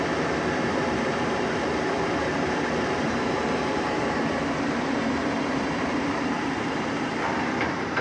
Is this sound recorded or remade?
remade